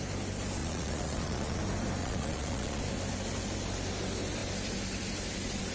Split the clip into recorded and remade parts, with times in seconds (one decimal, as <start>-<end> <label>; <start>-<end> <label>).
0.0-0.6 recorded; 0.6-1.6 remade; 1.6-2.0 recorded; 2.0-2.8 remade; 2.8-5.7 recorded